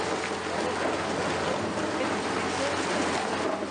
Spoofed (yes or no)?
no